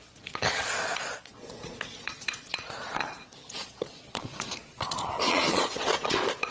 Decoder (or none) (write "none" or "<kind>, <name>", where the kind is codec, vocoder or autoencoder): vocoder, Vocos